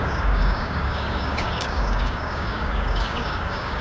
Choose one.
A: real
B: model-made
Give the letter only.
B